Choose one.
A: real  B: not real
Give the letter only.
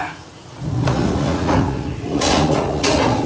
B